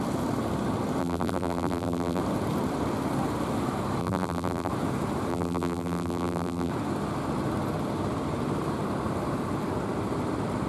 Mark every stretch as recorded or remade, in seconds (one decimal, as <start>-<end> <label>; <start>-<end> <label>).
0.0-1.0 recorded; 1.0-2.2 remade; 2.2-4.0 recorded; 4.0-4.7 remade; 4.7-5.3 recorded; 5.3-6.7 remade; 6.7-10.7 recorded